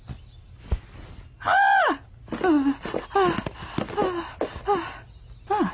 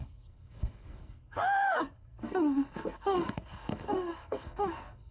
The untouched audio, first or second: first